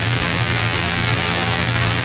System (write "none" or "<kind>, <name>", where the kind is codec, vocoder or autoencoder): vocoder, BigVGAN v2